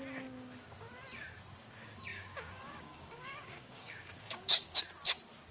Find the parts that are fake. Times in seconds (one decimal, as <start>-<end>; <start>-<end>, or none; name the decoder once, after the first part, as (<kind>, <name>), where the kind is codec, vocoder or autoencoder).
2.1-4.8 (codec, DAC)